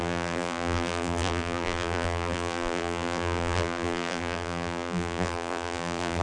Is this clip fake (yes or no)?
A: yes